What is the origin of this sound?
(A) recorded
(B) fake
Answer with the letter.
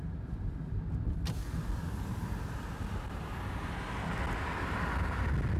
A